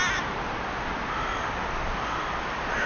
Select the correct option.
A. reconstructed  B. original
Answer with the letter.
B